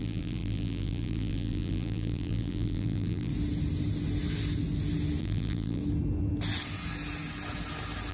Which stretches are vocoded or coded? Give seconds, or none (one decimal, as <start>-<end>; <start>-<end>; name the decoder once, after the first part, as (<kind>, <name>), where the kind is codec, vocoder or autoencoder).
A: 0.0-3.3 (vocoder, BigVGAN v2); 5.2-5.8